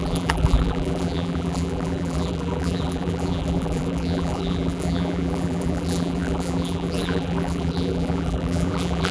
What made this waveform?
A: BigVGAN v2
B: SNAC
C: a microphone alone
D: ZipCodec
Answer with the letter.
A